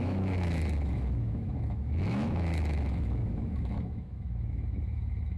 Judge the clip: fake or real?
fake